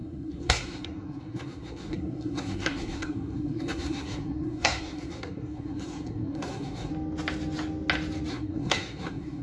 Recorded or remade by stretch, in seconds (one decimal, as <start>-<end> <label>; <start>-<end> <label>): 0.0-6.9 remade; 6.9-8.3 recorded; 8.3-9.4 remade